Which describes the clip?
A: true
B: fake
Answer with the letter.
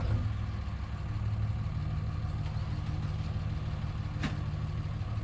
A